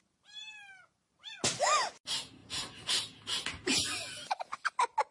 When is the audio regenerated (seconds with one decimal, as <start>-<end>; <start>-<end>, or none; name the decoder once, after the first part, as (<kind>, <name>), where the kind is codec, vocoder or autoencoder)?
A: none